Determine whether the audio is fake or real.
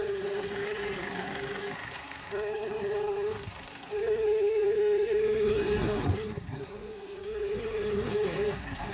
fake